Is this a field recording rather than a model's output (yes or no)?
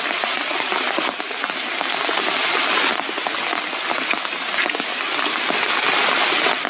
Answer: yes